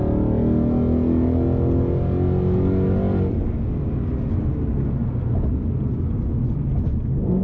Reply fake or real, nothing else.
real